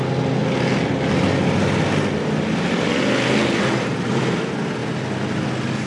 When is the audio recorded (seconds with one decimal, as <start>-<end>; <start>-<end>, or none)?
0.0-5.9

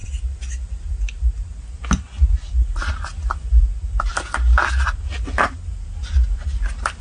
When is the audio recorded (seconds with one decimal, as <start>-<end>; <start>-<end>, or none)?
0.0-7.0

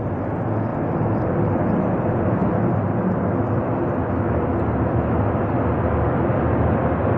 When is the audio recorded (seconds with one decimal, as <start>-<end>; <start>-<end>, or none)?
0.0-7.2

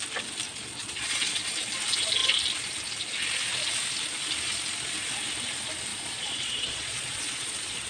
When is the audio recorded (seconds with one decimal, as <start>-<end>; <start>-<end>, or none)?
0.0-0.8; 1.5-5.9

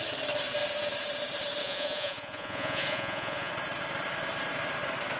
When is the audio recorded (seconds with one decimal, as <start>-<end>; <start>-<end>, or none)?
0.0-1.6; 3.5-5.2

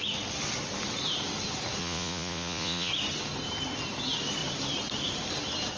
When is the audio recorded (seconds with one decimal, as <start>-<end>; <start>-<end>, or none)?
0.0-1.8; 2.9-5.8

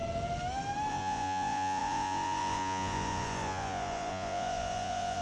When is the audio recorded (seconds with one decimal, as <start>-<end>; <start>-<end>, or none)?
0.0-0.9

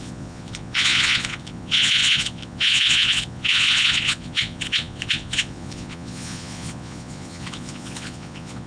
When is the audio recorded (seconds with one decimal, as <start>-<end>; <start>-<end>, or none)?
none